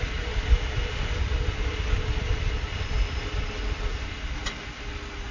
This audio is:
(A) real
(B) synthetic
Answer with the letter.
A